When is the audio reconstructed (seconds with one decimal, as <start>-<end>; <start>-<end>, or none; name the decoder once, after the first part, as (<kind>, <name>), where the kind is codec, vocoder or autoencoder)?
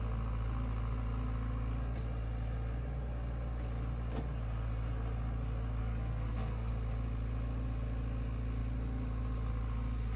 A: 5.8-6.7 (codec, SNAC)